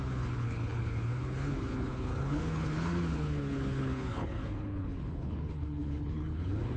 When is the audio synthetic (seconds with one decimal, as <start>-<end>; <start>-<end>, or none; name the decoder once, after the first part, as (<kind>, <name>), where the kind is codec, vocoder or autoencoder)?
0.0-6.8 (codec, HILCodec)